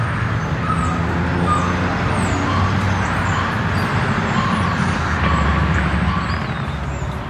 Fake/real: real